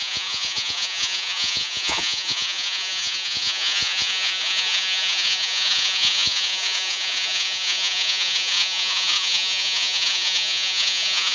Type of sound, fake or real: fake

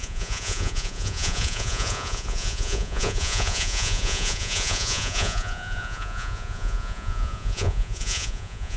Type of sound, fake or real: fake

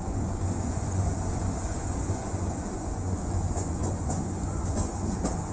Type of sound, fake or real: fake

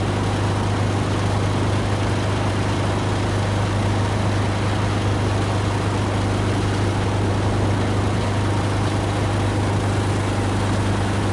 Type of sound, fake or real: real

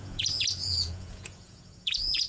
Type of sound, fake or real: fake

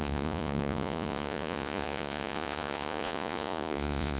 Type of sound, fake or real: fake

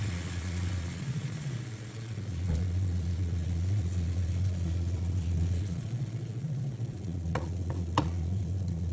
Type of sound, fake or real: fake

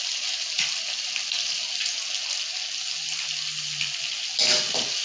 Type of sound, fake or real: real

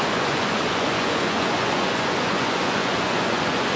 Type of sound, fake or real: fake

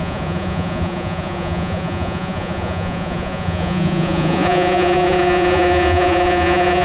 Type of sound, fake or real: fake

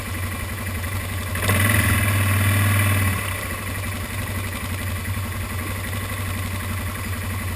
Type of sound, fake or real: real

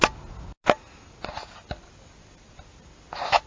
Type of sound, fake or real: real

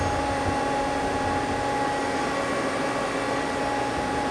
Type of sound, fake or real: real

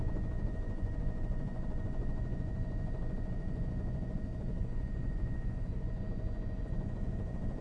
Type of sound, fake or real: fake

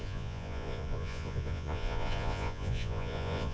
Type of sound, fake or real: fake